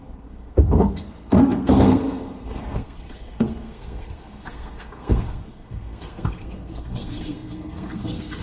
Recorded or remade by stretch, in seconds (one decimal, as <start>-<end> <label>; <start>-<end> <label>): 0.0-8.4 remade